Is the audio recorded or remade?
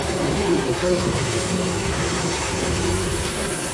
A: remade